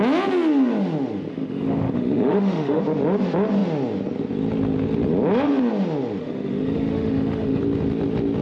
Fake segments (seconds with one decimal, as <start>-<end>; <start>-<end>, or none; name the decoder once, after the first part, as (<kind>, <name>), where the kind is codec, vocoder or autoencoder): 1.3-2.8 (autoencoder, DAC-VAE); 6.2-7.6